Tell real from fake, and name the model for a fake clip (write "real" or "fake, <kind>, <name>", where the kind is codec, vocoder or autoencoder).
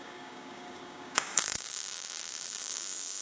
fake, codec, DAC